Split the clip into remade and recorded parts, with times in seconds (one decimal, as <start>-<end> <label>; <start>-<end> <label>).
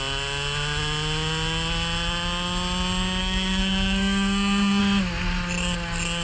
0.0-3.2 recorded; 3.2-4.8 remade; 4.8-6.2 recorded